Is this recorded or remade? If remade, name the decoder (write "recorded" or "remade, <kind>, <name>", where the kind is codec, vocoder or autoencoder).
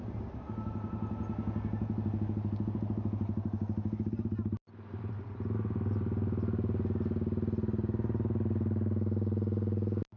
recorded